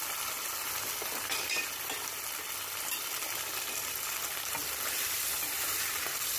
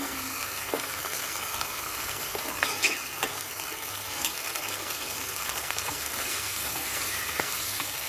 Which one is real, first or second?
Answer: first